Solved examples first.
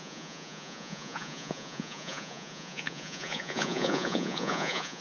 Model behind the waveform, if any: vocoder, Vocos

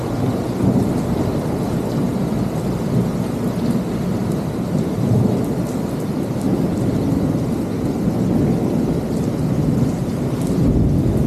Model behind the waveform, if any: none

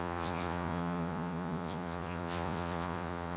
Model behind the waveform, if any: vocoder, Vocos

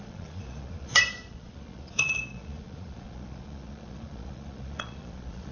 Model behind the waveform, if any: vocoder, Vocos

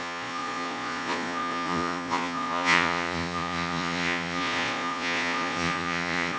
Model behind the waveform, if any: vocoder, Vocos